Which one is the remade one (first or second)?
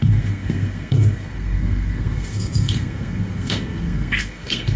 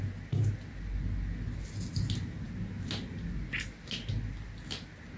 first